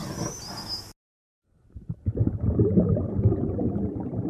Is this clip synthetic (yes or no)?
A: no